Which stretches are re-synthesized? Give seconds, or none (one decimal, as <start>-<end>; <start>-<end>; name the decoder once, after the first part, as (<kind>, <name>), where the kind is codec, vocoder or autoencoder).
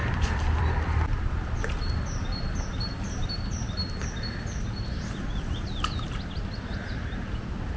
0.0-4.1 (vocoder, BigVGAN v2)